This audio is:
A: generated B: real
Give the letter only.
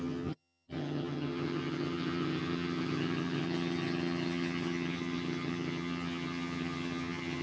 A